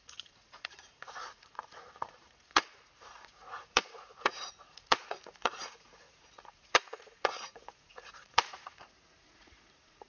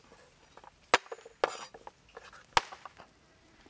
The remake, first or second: first